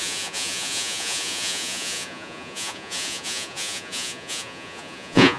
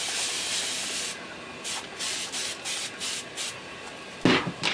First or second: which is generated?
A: first